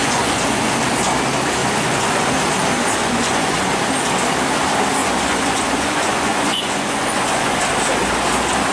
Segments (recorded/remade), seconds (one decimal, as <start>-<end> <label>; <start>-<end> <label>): 0.0-0.7 remade; 0.7-1.6 recorded; 1.6-2.3 remade; 2.3-3.0 recorded; 3.0-3.8 remade; 3.8-5.0 recorded; 5.0-7.6 remade; 7.6-8.7 recorded